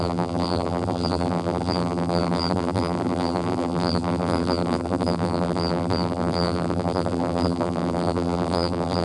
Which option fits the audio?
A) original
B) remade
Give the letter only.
B